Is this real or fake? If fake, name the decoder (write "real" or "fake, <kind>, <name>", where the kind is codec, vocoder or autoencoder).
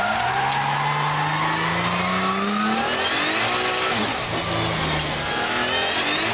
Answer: real